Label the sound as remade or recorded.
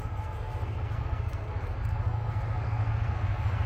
remade